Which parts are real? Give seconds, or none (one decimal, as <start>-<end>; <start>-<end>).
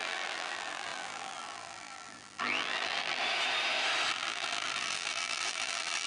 3.2-4.1